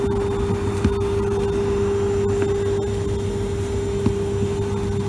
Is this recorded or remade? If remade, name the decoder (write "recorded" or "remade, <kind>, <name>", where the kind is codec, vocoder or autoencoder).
recorded